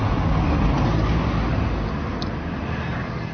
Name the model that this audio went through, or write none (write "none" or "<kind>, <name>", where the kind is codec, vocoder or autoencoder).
none